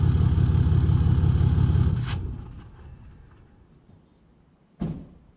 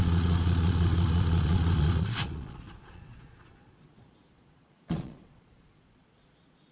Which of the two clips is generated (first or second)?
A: second